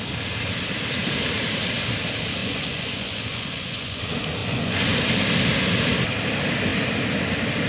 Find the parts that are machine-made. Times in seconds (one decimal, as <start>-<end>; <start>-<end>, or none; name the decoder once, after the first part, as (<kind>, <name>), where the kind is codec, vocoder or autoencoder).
2.4-4.0 (vocoder, Vocos); 4.4-5.0